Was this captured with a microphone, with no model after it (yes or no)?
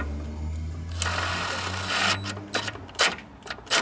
yes